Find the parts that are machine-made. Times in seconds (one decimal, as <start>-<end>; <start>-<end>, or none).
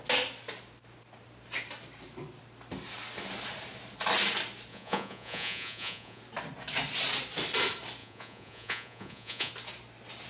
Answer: 4.7-6.2; 8.0-9.5